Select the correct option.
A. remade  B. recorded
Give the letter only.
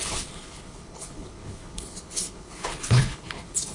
A